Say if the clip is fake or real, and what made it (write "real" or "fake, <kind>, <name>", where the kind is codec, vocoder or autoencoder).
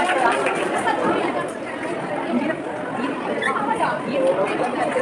real